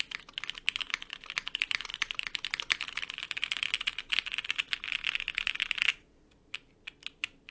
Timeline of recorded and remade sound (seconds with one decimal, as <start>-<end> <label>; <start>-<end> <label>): 0.0-7.5 recorded